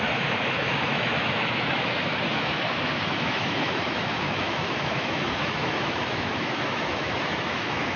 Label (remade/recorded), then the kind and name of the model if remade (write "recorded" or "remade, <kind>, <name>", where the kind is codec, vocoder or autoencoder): remade, autoencoder, DAC-VAE